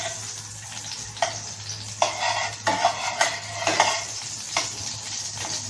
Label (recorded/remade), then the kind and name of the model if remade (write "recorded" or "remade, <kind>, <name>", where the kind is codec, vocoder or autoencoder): recorded